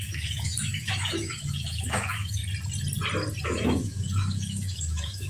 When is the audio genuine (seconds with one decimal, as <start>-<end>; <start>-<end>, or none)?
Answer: 2.4-3.4